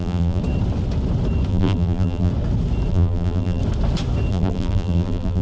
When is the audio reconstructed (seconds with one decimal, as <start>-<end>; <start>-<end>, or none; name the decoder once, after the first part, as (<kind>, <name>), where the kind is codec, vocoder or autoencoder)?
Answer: 0.0-0.4 (vocoder, BigVGAN v2); 1.5-2.3; 2.9-3.6; 4.3-5.4